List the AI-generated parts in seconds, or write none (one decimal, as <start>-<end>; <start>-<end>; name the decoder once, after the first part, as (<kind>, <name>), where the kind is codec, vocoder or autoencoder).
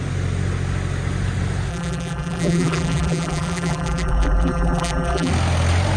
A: 1.7-5.3 (vocoder, BigVGAN v2)